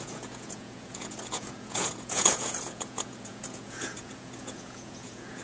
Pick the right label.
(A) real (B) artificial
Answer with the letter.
B